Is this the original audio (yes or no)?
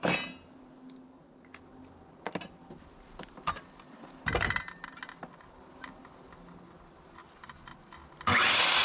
yes